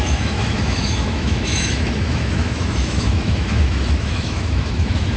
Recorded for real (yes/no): no